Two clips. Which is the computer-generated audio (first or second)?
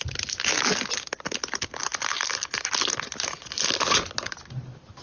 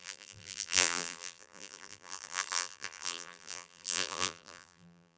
second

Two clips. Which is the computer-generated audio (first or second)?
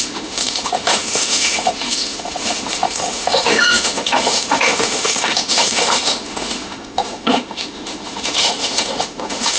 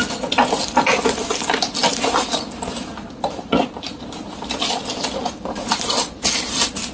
first